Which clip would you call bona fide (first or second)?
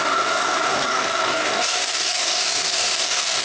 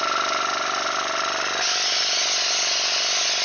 second